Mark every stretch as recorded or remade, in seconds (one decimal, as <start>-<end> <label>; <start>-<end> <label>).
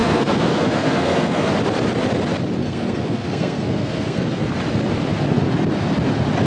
0.0-1.5 remade; 1.5-2.6 recorded; 2.6-4.5 remade; 4.5-6.5 recorded